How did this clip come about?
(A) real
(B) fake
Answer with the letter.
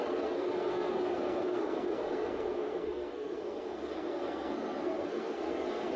B